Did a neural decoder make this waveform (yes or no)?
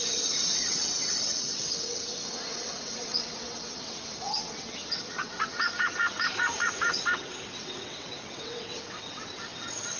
yes